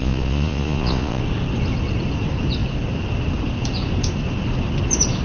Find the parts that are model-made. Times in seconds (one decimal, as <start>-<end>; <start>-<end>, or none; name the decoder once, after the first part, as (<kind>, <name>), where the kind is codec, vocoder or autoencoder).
0.0-1.2 (vocoder, Vocos)